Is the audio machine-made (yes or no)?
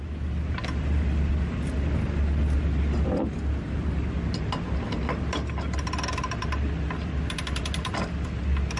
no